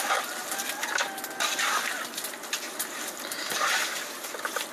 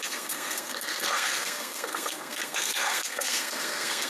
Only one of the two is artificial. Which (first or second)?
second